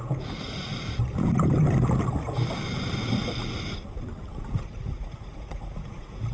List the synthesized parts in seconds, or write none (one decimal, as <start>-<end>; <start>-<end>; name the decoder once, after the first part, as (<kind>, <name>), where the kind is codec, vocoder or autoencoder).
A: 0.0-0.7 (vocoder, Vocos); 4.5-6.3